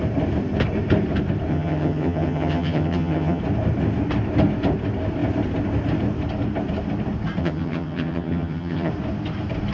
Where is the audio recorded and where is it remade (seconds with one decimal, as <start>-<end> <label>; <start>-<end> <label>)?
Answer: 0.0-1.5 recorded; 1.5-3.4 remade; 3.4-7.4 recorded; 7.4-8.9 remade; 8.9-9.7 recorded